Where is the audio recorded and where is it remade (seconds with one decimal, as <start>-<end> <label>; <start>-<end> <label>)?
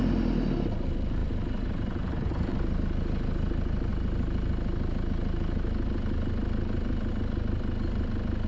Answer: 0.0-1.2 recorded; 1.2-2.8 remade; 2.8-8.5 recorded